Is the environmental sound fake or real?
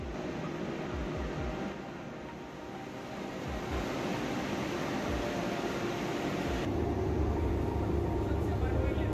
real